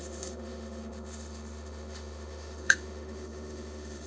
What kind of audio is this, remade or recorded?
remade